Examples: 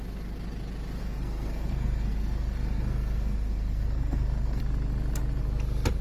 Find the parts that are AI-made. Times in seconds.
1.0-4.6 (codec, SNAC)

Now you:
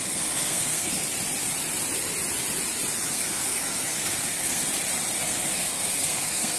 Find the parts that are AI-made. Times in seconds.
0.0-1.0 (codec, SNAC); 3.1-4.6; 5.2-6.6

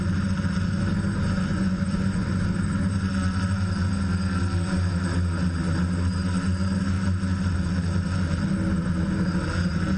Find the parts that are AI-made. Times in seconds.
1.5-2.4 (vocoder, Vocos)